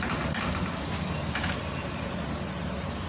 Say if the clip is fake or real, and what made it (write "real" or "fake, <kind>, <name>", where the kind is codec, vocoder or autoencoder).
real